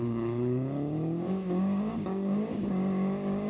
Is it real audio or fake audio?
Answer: fake